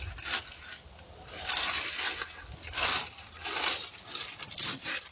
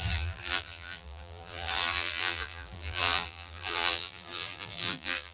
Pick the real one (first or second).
first